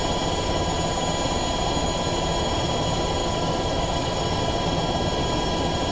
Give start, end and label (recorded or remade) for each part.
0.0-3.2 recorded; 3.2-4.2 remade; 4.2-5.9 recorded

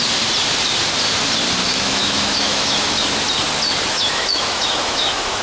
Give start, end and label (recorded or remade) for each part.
0.0-1.6 recorded; 1.6-3.0 remade; 3.0-3.9 recorded; 3.9-5.4 remade

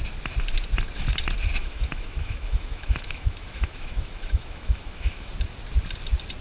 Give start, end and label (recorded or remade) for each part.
0.0-1.6 recorded; 1.6-5.3 remade; 5.3-6.4 recorded

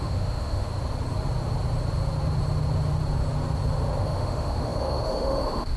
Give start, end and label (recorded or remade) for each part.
0.0-0.7 remade; 0.7-4.0 recorded; 4.0-5.8 remade

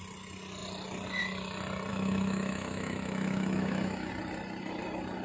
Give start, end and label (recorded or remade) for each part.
0.0-1.9 recorded; 1.9-4.1 remade; 4.1-5.2 recorded

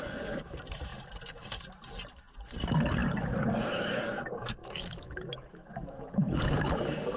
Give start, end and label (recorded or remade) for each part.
0.0-4.6 recorded; 4.6-6.4 remade; 6.4-7.2 recorded

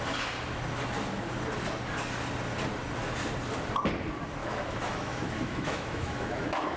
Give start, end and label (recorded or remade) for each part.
0.0-4.4 recorded; 4.4-6.8 remade

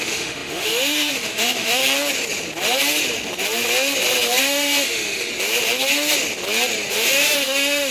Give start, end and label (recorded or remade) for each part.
0.0-1.8 remade; 1.8-4.4 recorded; 4.4-5.3 remade; 5.3-6.9 recorded; 6.9-7.9 remade